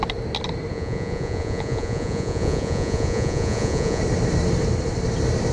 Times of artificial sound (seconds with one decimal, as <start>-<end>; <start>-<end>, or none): 0.7-4.0